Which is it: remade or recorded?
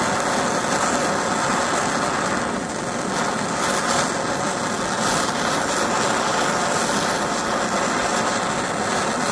recorded